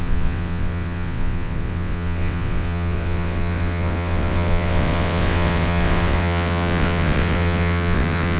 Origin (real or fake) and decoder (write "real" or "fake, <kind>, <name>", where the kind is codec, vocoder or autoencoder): fake, vocoder, WaveNeXt